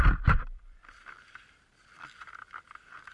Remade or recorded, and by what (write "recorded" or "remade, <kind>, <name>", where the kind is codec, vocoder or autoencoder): remade, vocoder, BigVGAN v2